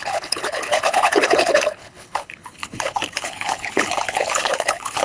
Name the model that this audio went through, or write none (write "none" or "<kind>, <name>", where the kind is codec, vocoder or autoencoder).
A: codec, HILCodec